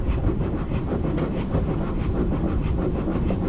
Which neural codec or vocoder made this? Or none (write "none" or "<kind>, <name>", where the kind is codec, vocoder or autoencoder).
vocoder, BigVGAN v2